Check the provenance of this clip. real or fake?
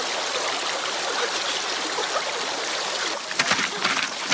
real